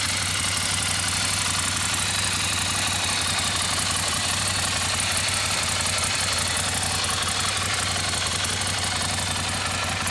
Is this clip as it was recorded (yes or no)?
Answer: yes